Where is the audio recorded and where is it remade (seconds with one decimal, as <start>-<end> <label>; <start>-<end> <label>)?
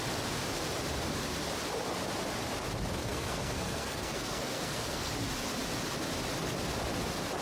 0.0-3.0 recorded; 3.0-5.1 remade; 5.1-7.4 recorded